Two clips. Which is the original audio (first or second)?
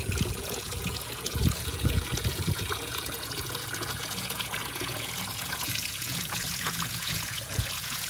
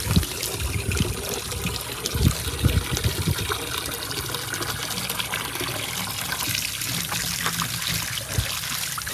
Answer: second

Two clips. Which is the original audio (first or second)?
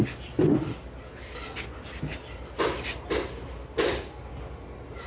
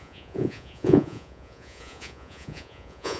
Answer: first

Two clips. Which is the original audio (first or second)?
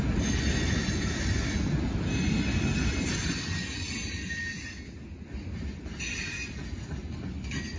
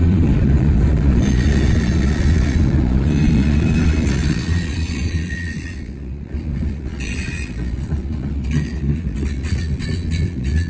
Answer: first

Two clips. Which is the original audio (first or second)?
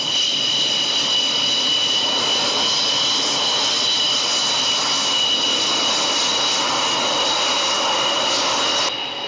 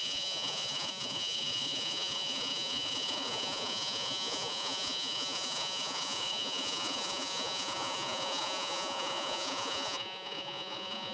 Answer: first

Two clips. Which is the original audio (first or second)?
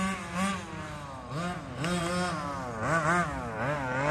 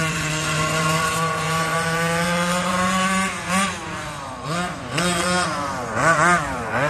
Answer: first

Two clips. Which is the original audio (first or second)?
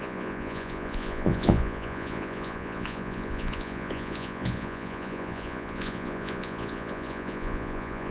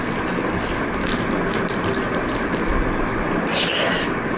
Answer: second